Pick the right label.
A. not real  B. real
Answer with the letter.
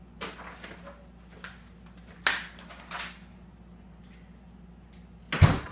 B